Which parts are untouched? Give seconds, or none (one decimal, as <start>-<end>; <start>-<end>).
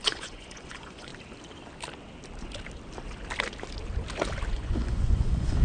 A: 1.1-4.5